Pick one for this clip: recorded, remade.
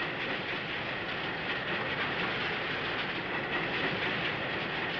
recorded